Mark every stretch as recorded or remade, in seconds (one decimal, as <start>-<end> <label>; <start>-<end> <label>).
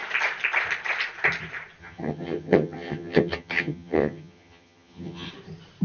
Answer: 0.0-1.8 recorded; 1.8-5.3 remade; 5.3-5.8 recorded